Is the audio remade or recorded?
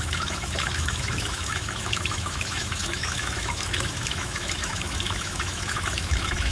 remade